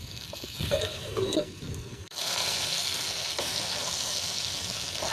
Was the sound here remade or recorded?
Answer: remade